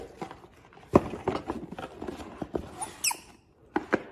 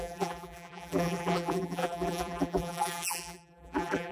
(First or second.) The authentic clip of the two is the first